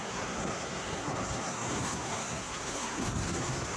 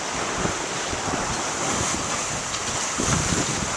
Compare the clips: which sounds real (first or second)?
second